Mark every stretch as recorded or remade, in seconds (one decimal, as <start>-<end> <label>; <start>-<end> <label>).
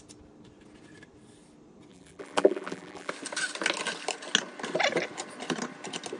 0.0-1.9 recorded; 1.9-3.1 remade; 3.1-6.2 recorded